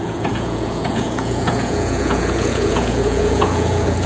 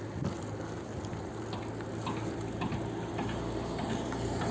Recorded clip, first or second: second